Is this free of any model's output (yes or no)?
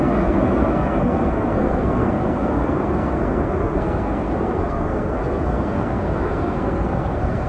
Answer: no